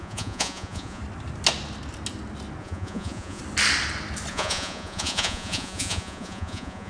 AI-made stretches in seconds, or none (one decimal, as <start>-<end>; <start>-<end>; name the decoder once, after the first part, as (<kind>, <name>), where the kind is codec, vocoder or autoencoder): 0.0-1.0 (vocoder, Vocos); 2.6-3.4; 4.3-6.9